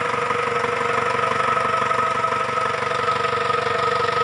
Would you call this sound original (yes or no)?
yes